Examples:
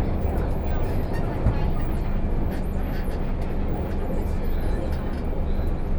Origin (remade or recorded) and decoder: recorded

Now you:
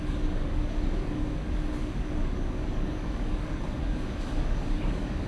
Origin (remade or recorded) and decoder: remade, codec, DAC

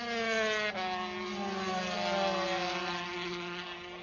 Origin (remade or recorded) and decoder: recorded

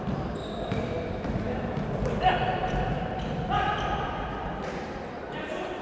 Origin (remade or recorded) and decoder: remade, vocoder, BigVGAN v2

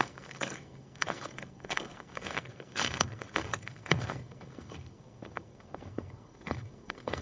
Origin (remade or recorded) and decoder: remade, codec, SNAC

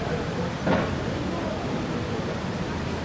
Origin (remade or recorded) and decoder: recorded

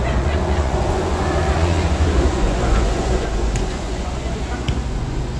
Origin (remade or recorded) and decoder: remade, vocoder, Vocos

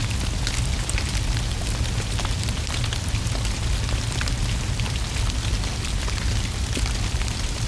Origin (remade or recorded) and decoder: recorded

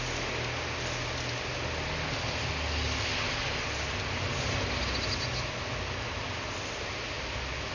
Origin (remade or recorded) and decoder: recorded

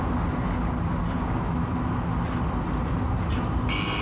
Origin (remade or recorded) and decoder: recorded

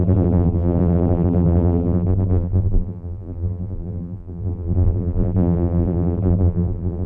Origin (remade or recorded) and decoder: remade, vocoder, BigVGAN v2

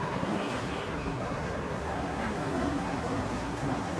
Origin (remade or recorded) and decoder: remade, codec, SNAC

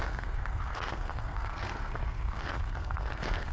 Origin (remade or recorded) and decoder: remade, codec, SNAC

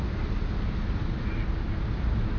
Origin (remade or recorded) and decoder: recorded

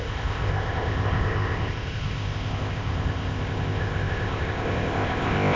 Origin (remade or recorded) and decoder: remade, codec, ZipCodec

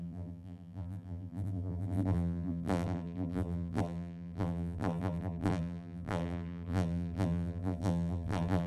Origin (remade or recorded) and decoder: remade, vocoder, BigVGAN v2